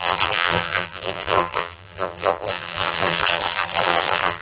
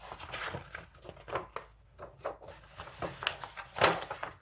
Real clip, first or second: second